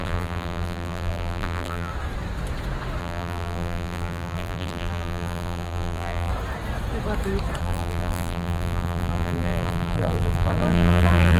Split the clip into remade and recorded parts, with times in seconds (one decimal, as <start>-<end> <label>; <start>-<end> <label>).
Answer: 0.0-1.9 remade; 1.9-3.0 recorded; 3.0-6.3 remade; 6.3-7.6 recorded; 7.6-11.4 remade